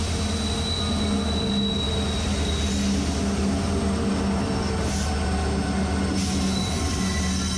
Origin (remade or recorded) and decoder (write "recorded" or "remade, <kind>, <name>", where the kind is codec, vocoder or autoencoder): recorded